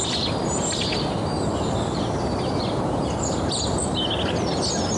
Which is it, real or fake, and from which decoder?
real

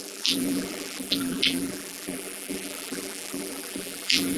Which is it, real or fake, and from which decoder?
fake, vocoder, BigVGAN v2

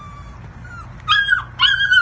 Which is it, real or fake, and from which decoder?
real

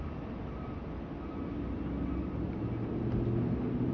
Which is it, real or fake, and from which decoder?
real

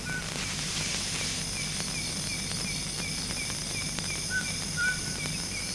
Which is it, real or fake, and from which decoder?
real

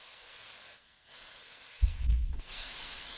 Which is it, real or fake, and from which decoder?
fake, codec, SNAC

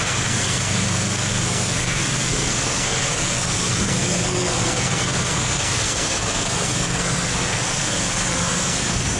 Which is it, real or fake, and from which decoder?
fake, codec, SNAC